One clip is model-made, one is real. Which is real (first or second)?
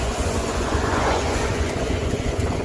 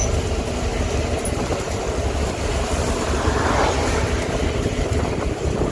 second